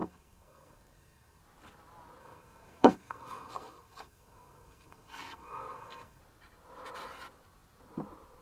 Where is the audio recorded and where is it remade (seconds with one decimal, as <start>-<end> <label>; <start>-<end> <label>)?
0.0-1.4 remade; 1.4-2.2 recorded; 2.2-6.2 remade; 6.2-8.4 recorded